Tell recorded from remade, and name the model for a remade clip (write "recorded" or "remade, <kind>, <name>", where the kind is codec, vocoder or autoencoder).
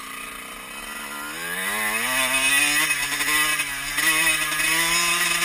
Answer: recorded